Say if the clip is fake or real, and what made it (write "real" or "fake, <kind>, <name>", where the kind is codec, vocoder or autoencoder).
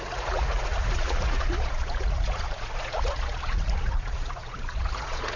fake, vocoder, Vocos